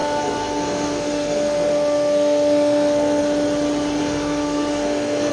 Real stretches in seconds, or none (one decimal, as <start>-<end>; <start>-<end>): 3.2-4.0